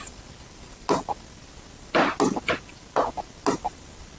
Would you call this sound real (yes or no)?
yes